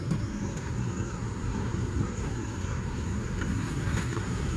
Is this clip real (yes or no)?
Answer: no